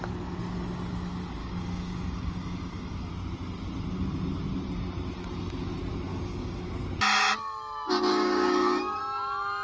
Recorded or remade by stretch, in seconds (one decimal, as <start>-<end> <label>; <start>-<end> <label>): 0.0-1.4 recorded; 1.4-3.1 remade; 3.1-6.1 recorded; 6.1-6.7 remade; 6.7-8.1 recorded; 8.1-9.0 remade; 9.0-9.6 recorded